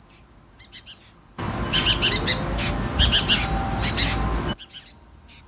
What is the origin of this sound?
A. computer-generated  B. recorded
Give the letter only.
B